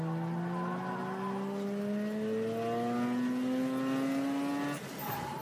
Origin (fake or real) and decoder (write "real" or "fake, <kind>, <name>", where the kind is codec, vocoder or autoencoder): real